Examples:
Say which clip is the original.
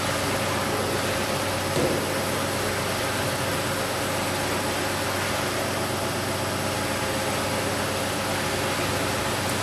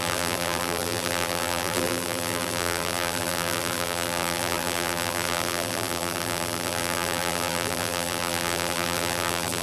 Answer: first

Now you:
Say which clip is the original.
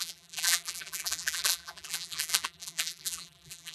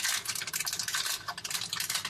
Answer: second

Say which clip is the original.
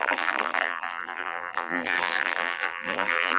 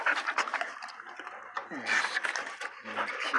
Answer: second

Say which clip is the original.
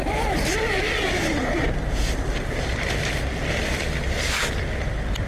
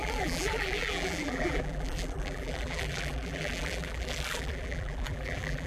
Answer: first